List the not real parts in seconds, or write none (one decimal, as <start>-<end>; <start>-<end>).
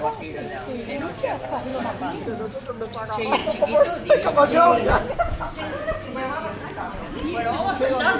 3.4-5.5